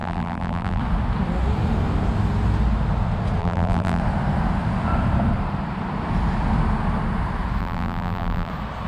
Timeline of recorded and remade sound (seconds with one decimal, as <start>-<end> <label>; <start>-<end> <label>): 0.0-0.8 remade; 0.8-3.4 recorded; 3.4-4.0 remade; 4.0-7.6 recorded; 7.6-8.5 remade; 8.5-8.9 recorded